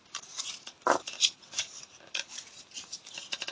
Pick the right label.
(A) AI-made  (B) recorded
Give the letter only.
A